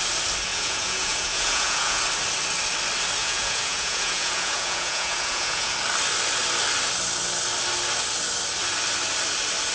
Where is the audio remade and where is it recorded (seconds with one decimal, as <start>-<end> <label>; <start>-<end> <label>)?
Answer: 0.0-0.5 recorded; 0.5-2.0 remade; 2.0-3.2 recorded; 3.2-5.7 remade; 5.7-9.7 recorded